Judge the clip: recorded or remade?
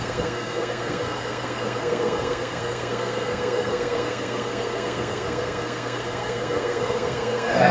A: remade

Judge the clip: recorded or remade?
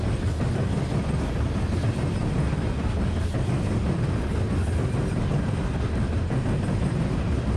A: recorded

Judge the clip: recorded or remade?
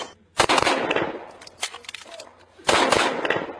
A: recorded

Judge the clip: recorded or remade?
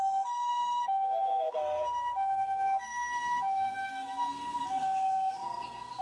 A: remade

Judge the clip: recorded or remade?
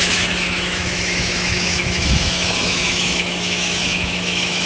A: remade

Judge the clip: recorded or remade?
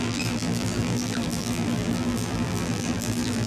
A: remade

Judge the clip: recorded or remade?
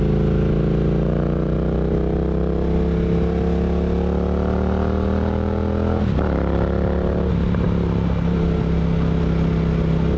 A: recorded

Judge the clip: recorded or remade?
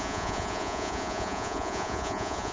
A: remade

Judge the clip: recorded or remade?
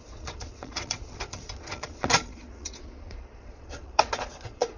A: remade